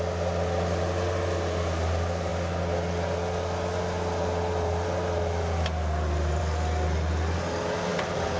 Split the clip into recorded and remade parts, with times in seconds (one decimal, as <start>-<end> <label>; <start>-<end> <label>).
0.0-8.4 recorded

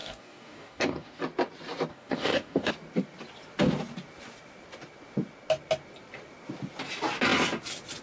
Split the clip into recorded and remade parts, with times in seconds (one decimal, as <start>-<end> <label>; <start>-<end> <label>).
0.0-1.2 remade; 1.2-1.9 recorded; 1.9-2.7 remade; 2.7-8.0 recorded